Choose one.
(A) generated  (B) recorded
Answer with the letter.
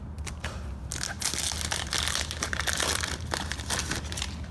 B